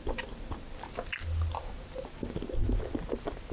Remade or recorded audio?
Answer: recorded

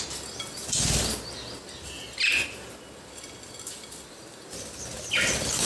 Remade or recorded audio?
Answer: recorded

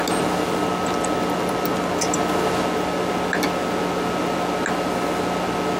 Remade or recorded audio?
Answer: recorded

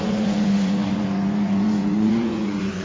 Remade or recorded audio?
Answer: remade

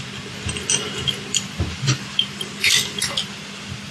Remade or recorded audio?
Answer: recorded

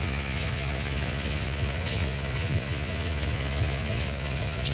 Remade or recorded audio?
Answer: remade